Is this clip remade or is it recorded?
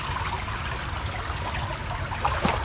recorded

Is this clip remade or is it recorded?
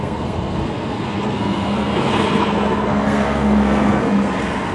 remade